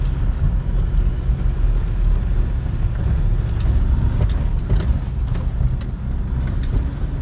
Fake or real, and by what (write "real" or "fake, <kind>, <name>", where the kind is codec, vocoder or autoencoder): real